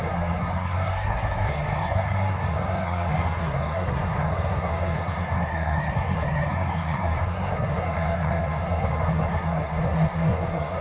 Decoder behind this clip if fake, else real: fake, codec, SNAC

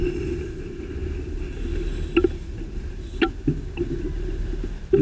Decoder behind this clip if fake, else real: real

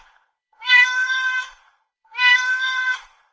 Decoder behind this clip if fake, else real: fake, codec, SNAC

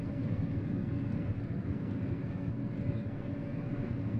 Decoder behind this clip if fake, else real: fake, codec, SNAC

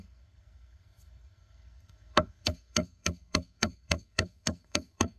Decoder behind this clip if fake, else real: fake, codec, SNAC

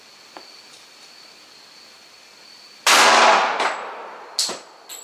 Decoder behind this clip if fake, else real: real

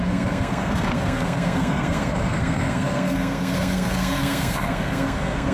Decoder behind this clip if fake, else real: fake, codec, SNAC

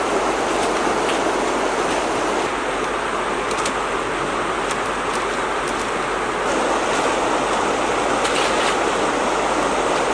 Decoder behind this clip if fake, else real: real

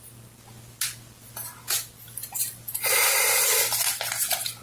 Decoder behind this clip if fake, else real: real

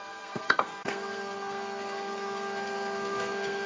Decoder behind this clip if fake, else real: fake, codec, SNAC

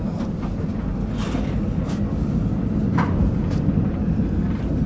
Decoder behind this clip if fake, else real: real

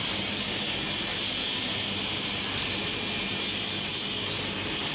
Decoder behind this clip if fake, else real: real